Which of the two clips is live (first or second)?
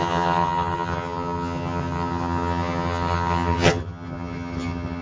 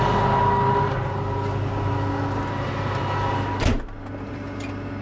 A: second